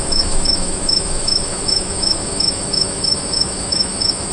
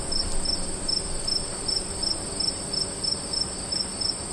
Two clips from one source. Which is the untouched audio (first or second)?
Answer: second